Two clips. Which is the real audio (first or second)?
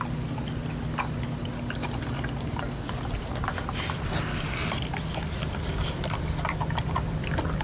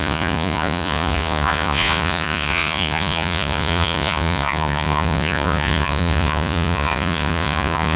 first